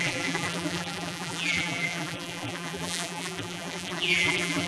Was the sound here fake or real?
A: fake